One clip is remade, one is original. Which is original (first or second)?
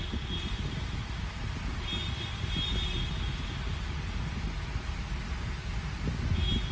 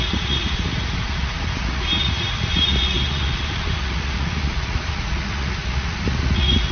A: first